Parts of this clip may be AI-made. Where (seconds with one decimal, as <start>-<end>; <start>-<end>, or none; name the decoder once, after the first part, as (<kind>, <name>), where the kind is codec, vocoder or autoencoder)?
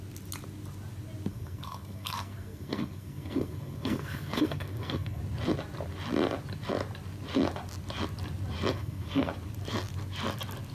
1.3-5.2 (codec, SNAC); 8.7-9.3